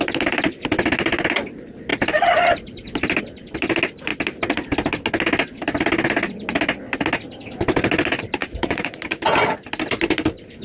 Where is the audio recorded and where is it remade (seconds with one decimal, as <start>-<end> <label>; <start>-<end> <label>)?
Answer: 0.0-8.4 recorded; 8.4-9.0 remade; 9.0-10.6 recorded